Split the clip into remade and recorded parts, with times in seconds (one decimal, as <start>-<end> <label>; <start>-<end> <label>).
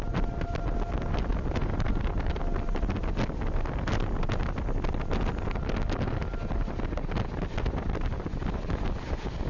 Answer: 0.0-9.5 recorded